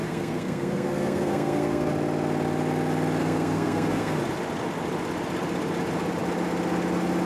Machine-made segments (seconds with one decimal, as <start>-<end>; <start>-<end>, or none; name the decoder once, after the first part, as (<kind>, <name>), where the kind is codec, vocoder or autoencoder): 0.0-1.9 (codec, SNAC); 3.2-4.2